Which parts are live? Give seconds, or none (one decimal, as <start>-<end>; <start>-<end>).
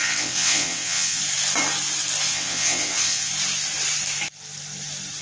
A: 1.2-2.3; 3.3-5.2